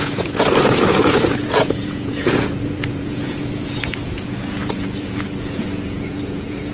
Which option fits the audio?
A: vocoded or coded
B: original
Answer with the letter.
A